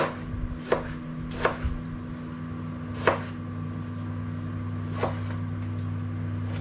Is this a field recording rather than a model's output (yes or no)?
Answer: yes